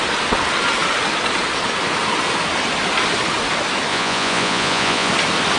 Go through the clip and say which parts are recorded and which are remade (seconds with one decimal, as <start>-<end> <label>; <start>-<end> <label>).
0.0-3.9 recorded; 3.9-5.1 remade; 5.1-5.6 recorded